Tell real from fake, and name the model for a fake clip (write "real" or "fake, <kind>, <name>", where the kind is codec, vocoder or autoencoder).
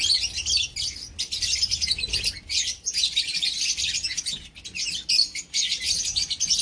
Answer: real